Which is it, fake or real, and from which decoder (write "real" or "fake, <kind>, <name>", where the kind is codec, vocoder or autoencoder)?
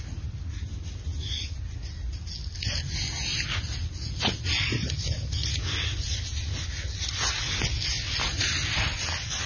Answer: real